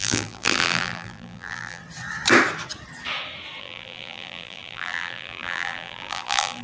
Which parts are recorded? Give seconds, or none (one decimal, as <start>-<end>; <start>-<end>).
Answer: 1.8-3.6